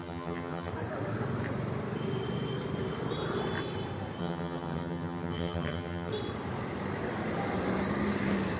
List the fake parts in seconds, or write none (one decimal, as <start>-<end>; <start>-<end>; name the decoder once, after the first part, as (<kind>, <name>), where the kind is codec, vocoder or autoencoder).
0.0-0.7 (vocoder, HiFi-GAN); 4.2-6.1